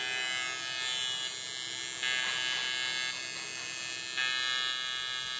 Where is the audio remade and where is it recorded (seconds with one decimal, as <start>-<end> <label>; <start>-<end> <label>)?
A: 0.0-5.4 recorded